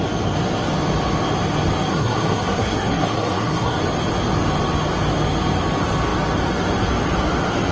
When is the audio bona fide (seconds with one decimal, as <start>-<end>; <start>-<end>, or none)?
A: 0.0-1.9; 3.8-7.7